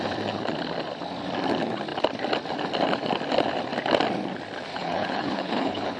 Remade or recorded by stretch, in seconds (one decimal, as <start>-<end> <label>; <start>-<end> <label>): 0.0-4.7 recorded; 4.7-6.0 remade